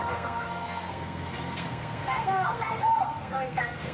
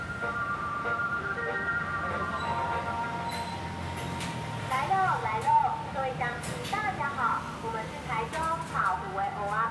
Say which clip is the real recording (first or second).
second